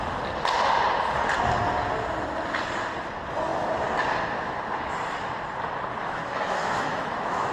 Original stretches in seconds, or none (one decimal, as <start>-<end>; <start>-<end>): 0.0-6.0